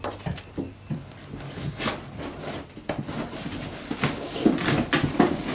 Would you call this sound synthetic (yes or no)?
no